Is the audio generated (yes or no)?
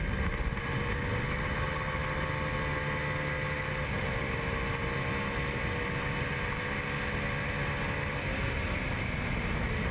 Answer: no